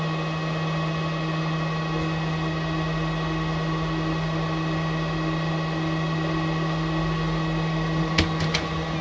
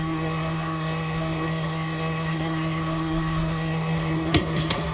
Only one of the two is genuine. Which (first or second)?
first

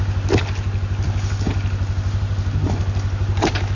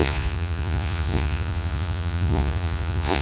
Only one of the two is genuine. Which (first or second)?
first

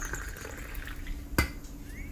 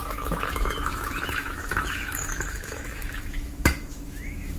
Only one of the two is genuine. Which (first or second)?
first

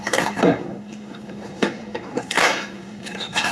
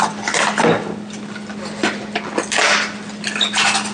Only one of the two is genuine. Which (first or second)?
second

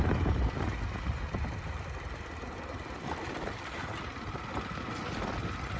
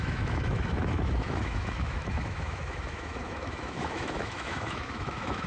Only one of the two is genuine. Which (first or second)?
first